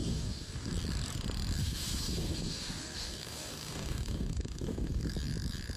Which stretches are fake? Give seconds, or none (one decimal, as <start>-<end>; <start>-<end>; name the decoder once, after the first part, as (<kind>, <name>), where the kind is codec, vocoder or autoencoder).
0.0-0.7 (codec, DAC); 1.6-5.1